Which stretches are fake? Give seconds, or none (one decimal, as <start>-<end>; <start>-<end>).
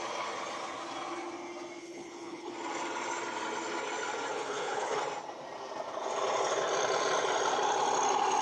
1.8-2.5; 4.3-5.0